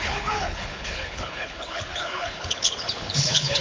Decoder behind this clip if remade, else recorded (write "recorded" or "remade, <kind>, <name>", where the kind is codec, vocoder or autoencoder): remade, codec, HILCodec